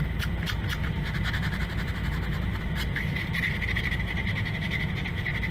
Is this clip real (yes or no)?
no